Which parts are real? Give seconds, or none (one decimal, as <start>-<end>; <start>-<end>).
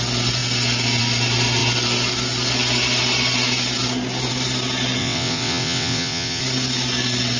0.0-5.0; 6.4-7.4